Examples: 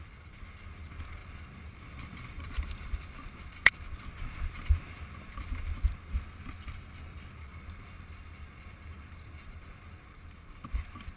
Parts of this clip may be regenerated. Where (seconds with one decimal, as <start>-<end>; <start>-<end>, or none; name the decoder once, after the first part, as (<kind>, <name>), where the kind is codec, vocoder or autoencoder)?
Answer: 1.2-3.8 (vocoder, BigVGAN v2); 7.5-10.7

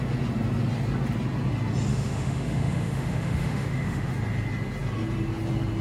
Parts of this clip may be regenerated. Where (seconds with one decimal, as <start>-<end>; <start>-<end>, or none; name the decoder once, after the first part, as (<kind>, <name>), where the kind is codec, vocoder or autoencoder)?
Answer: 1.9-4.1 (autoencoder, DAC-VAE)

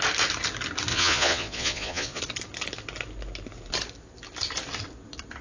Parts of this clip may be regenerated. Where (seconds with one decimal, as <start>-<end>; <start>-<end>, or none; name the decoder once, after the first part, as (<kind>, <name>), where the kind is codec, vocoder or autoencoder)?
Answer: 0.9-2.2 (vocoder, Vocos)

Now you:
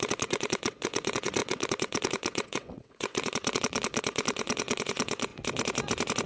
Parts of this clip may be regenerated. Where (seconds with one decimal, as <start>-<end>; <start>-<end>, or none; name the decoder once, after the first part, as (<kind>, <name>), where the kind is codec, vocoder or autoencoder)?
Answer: 0.0-5.3 (vocoder, WaveNeXt)

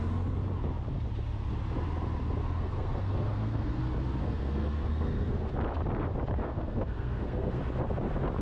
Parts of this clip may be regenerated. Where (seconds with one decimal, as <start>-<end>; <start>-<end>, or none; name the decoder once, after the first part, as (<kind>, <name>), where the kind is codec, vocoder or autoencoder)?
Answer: 2.4-3.8 (codec, SNAC); 4.2-5.5; 6.4-7.6

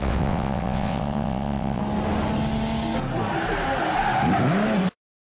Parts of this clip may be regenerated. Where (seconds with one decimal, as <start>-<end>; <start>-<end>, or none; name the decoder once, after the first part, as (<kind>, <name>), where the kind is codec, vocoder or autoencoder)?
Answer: 0.0-1.8 (vocoder, WaveNeXt)

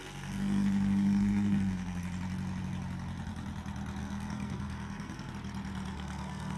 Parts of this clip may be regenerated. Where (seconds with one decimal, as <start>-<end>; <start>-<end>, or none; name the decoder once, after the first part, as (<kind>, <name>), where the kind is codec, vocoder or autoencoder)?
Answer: 0.0-2.0 (codec, SNAC); 4.0-5.3; 5.9-6.6